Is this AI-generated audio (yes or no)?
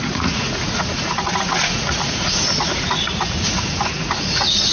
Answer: yes